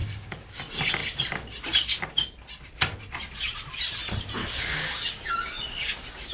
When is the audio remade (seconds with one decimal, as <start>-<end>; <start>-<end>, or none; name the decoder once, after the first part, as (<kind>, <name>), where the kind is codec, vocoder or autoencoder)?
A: 0.0-0.6 (codec, DAC); 4.4-6.3